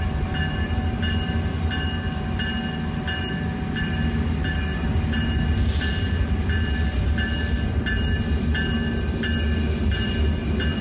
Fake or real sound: real